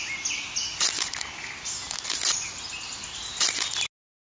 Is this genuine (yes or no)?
yes